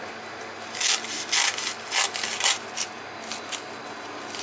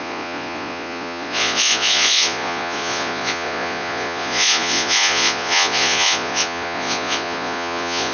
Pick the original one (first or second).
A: first